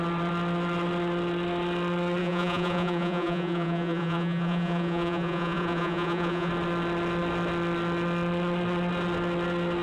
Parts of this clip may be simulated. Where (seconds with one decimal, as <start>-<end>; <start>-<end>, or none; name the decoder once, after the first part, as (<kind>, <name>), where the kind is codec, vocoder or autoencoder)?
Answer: 2.2-6.5 (vocoder, Vocos)